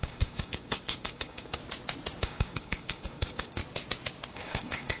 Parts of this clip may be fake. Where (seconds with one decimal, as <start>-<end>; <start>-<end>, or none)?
0.0-1.6; 2.2-3.6; 4.3-5.0